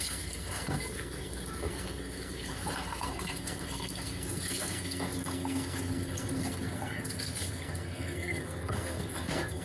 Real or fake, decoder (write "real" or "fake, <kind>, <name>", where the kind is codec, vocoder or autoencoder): fake, codec, SNAC